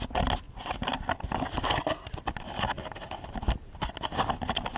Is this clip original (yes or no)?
yes